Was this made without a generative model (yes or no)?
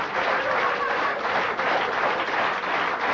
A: yes